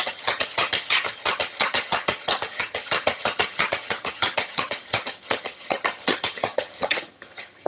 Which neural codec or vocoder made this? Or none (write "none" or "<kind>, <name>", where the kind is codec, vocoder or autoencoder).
vocoder, HiFi-GAN